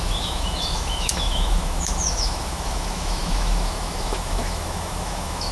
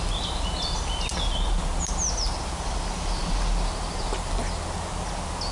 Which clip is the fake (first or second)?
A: first